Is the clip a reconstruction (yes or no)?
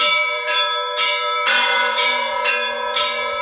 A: yes